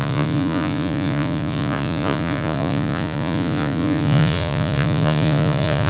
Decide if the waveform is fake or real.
fake